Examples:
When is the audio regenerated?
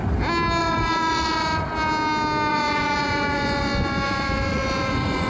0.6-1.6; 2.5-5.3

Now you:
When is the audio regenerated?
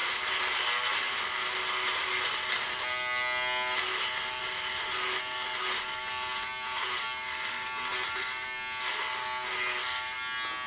none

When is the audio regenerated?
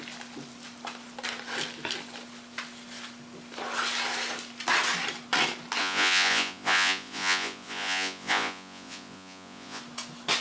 5.8-9.8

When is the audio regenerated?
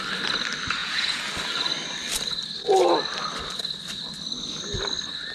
0.8-1.3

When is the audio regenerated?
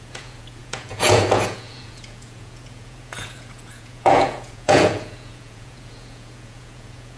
0.0-7.2